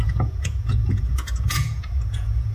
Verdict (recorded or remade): remade